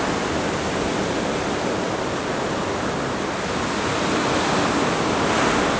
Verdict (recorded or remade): recorded